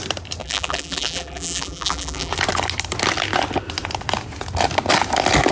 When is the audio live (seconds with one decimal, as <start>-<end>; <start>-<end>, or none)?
0.0-0.4; 2.3-5.5